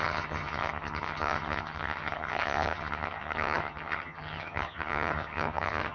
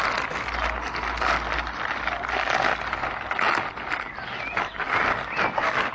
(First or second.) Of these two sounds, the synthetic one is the first